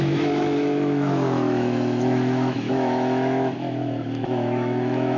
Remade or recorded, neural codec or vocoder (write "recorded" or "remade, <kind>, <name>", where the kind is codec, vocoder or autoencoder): remade, autoencoder, DAC-VAE